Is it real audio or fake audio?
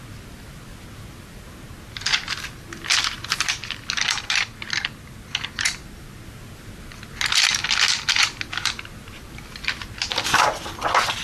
real